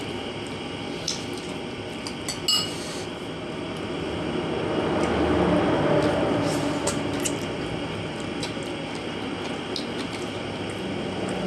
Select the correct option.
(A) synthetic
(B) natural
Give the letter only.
B